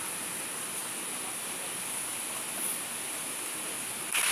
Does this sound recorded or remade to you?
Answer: recorded